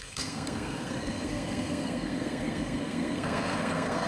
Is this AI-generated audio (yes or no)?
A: yes